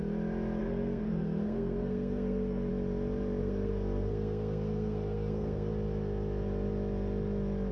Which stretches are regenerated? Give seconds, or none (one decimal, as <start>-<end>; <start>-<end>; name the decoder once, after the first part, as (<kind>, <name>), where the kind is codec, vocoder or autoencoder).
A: 0.6-2.7 (codec, SNAC); 3.4-5.7